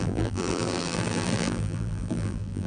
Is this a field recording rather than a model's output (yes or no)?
no